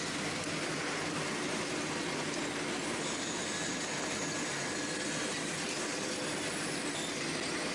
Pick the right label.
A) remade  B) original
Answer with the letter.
B